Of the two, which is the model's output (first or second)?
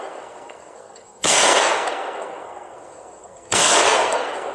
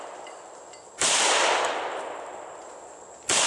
first